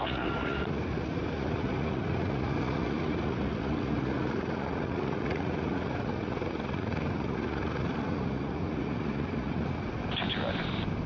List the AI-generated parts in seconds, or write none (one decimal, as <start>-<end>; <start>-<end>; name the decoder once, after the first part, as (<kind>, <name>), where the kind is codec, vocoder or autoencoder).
0.0-10.0 (vocoder, Vocos)